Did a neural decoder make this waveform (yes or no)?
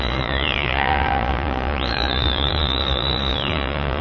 yes